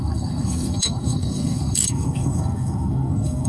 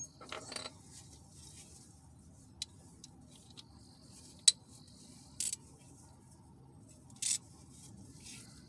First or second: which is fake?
first